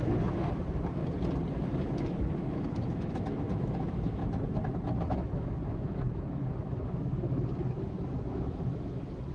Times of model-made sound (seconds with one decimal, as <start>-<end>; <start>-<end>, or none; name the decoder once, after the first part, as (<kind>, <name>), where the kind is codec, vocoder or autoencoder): 0.0-1.0 (autoencoder, DAC-VAE); 1.6-4.2; 5.0-9.3